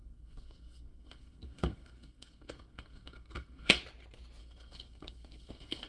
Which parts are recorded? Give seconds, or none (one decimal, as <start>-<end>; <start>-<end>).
3.8-4.4